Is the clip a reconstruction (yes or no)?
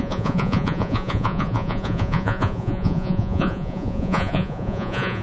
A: yes